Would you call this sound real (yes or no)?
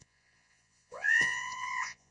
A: no